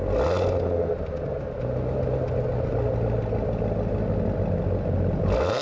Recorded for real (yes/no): yes